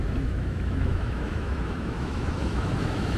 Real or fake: fake